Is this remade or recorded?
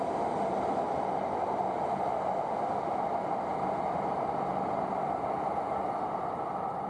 remade